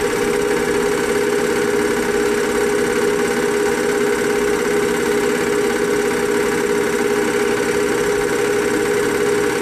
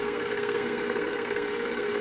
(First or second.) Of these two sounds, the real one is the first